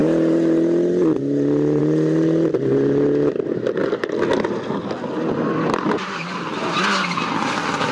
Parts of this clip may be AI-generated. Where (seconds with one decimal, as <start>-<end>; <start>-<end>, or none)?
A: none